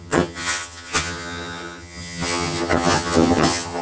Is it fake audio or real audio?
fake